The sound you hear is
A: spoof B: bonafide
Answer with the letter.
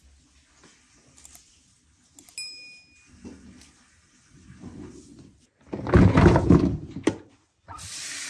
B